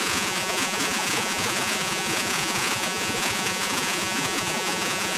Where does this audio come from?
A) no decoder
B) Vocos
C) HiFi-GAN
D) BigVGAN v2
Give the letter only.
B